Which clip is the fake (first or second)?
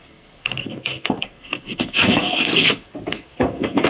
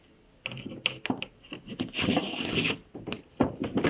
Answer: first